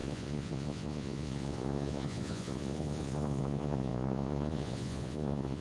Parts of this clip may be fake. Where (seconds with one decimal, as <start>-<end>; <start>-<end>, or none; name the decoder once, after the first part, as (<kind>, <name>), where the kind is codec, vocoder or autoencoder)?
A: 0.0-5.6 (vocoder, Vocos)